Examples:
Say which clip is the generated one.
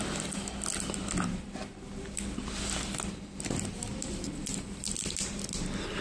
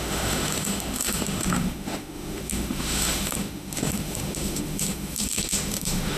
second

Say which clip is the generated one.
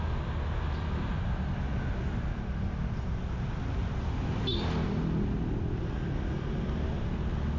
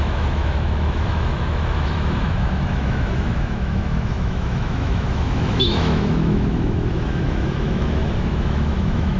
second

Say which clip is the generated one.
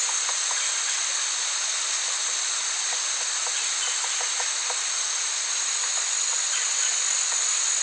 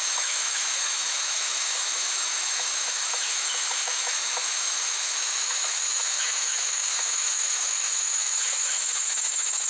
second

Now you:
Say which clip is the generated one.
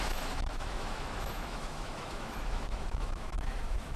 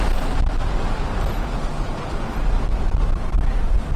first